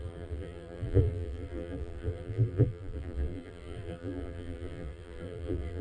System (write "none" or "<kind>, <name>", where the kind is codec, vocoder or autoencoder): vocoder, BigVGAN v2